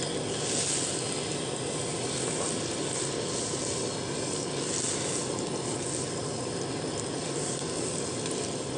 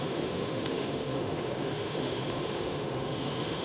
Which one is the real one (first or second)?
first